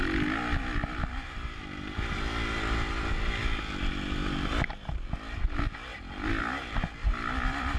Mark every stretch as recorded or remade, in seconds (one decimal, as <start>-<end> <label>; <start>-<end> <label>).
0.0-0.8 recorded; 0.8-2.2 remade; 2.2-5.9 recorded; 5.9-6.4 remade; 6.4-7.0 recorded; 7.0-7.8 remade